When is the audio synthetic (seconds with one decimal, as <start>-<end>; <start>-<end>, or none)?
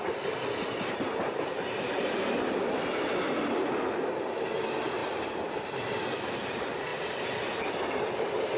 none